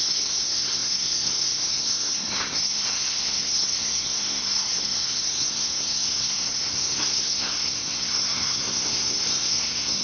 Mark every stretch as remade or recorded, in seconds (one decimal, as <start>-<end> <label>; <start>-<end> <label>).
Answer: 0.0-10.0 remade